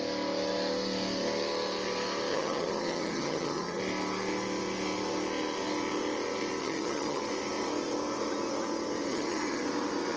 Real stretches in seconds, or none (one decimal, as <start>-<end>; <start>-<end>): 0.0-2.3; 3.8-6.6; 7.2-9.1; 9.6-10.2

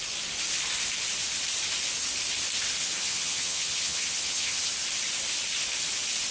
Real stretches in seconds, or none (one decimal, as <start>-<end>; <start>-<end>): 0.0-2.8; 4.7-6.3

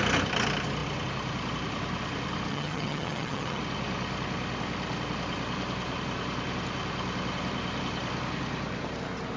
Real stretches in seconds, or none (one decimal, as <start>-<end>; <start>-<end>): 0.0-2.5; 3.6-9.4

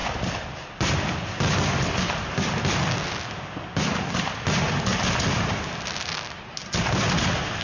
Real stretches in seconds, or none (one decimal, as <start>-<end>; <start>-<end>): 0.0-7.6